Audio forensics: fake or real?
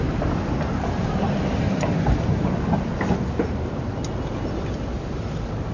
real